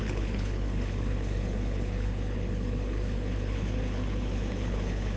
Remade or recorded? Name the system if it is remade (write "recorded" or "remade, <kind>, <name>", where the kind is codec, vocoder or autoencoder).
remade, codec, HILCodec